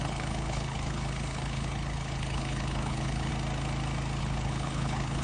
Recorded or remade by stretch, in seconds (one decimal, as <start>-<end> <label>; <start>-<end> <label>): 0.0-3.3 remade; 3.3-4.2 recorded; 4.2-5.2 remade